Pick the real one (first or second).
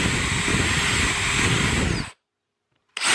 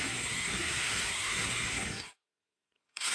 first